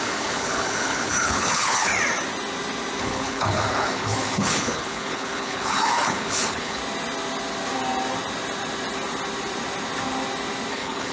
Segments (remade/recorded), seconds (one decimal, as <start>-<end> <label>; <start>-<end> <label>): 0.0-1.9 remade; 1.9-3.0 recorded; 3.0-6.8 remade; 6.8-10.7 recorded; 10.7-11.1 remade